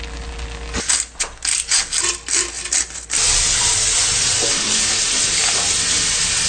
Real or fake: real